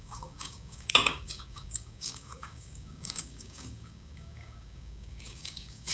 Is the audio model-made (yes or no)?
yes